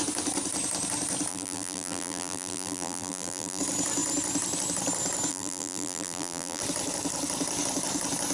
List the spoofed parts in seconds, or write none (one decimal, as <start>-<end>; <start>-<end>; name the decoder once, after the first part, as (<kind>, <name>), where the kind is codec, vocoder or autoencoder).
1.3-3.6 (vocoder, BigVGAN v2); 5.3-6.6